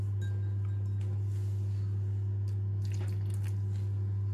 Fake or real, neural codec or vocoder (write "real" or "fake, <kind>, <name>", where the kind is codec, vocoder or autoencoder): real